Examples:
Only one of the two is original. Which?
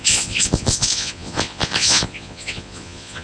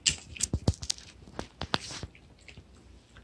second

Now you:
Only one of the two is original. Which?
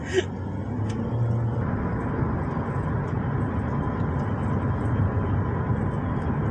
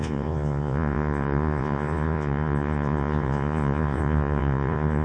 first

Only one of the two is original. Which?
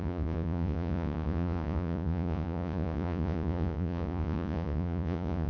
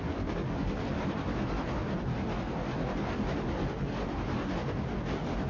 second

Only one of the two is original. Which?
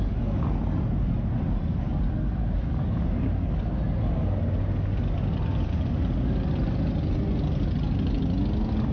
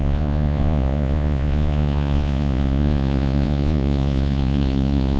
first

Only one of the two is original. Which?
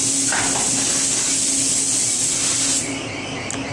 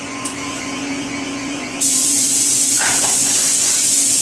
first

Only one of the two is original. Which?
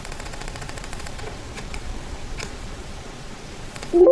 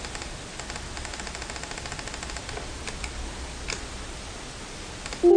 second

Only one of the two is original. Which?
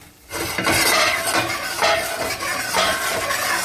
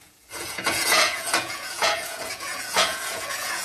first